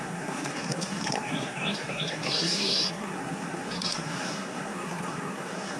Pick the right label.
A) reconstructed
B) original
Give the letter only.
A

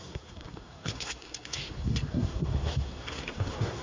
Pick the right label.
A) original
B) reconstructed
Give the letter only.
B